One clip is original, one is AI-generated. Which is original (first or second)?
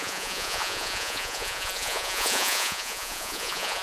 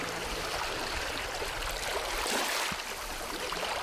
second